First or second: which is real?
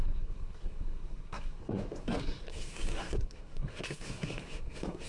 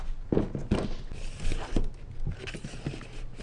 second